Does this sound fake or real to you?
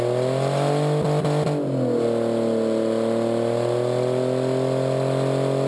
real